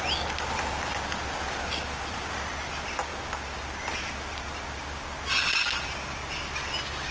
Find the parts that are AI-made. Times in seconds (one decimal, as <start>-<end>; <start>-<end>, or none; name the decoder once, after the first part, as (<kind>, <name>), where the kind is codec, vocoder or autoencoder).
none